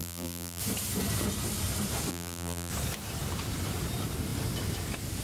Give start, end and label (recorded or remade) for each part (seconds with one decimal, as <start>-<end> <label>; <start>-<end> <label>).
0.0-0.6 remade; 0.6-2.1 recorded; 2.1-2.7 remade; 2.7-5.2 recorded